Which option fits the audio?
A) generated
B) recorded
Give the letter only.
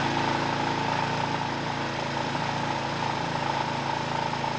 B